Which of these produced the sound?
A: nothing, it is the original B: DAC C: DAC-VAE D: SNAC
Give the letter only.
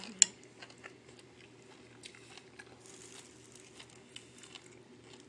A